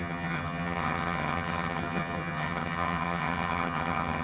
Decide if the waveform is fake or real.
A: fake